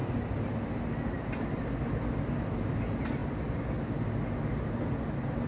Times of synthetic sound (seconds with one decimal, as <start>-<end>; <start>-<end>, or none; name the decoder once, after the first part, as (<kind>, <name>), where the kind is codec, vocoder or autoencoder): none